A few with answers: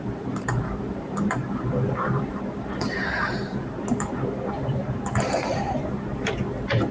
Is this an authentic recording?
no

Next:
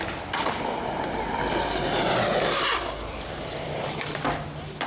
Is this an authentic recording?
no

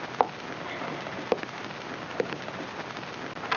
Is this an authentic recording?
yes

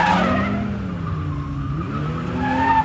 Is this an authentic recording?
yes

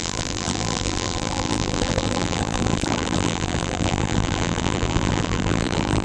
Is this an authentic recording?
no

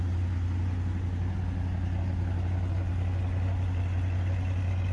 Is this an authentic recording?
yes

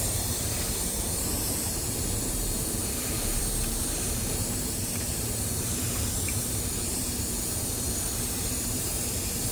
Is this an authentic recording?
no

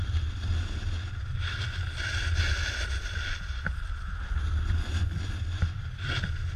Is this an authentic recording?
yes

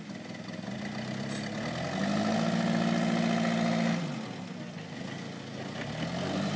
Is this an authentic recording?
yes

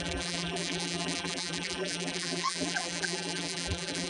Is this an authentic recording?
no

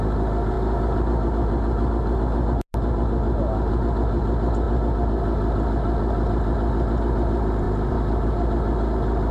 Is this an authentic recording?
yes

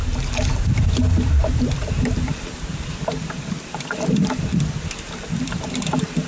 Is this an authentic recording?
no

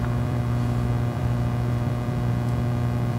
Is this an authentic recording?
no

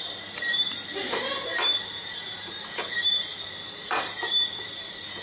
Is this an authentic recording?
no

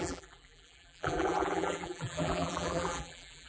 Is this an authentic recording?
no